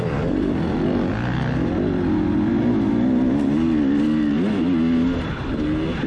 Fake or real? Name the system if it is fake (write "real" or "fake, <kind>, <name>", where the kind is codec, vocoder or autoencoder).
real